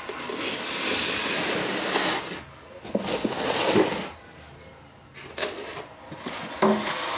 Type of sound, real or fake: real